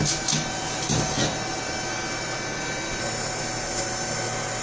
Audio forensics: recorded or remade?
recorded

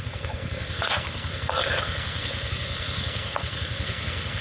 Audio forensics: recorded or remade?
remade